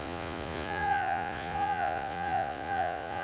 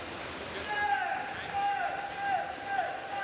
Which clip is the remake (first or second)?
first